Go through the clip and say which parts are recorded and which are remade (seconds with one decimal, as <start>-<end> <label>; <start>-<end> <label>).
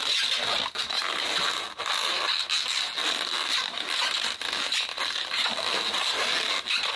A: 0.0-3.0 recorded; 3.0-5.5 remade; 5.5-7.0 recorded